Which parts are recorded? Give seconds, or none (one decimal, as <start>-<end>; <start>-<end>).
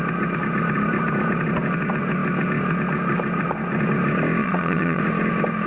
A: 0.0-4.4; 5.0-5.7